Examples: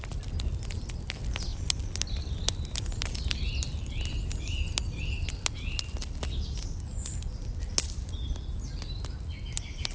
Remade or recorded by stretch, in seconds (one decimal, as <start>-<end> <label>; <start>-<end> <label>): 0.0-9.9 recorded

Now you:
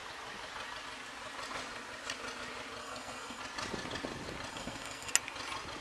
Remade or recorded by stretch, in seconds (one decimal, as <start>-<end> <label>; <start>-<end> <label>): 0.0-2.8 recorded; 2.8-3.4 remade; 3.4-4.5 recorded; 4.5-5.1 remade; 5.1-5.8 recorded

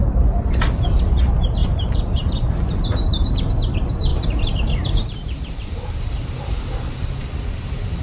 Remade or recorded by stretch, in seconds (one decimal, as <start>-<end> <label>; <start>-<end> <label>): 0.0-0.5 remade; 0.5-1.6 recorded; 1.6-3.3 remade; 3.3-4.1 recorded; 4.1-6.9 remade; 6.9-8.0 recorded

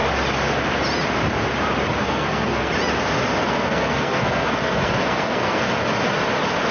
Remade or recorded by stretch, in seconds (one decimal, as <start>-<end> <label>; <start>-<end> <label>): 0.0-2.0 recorded; 2.0-2.7 remade; 2.7-3.4 recorded; 3.4-5.7 remade; 5.7-6.7 recorded

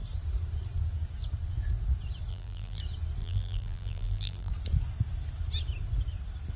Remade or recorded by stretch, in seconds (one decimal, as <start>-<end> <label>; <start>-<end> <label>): 0.0-2.3 recorded; 2.3-2.8 remade; 2.8-3.2 recorded; 3.2-4.5 remade; 4.5-6.6 recorded

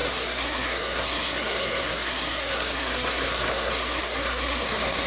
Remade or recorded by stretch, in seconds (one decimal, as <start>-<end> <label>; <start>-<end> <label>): 0.0-5.1 remade

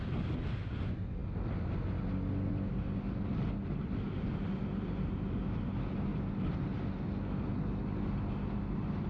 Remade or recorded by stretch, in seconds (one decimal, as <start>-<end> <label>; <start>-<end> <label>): 0.0-9.1 recorded